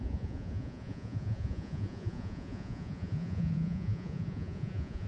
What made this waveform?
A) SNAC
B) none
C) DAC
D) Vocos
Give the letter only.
D